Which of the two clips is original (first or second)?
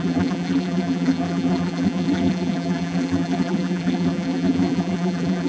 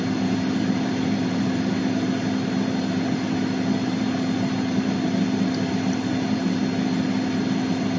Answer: second